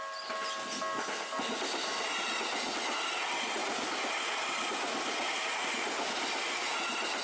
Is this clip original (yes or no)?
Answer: yes